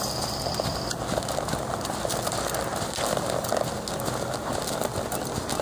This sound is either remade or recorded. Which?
recorded